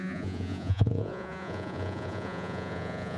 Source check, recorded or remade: remade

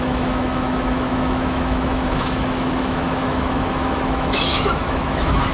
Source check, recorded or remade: remade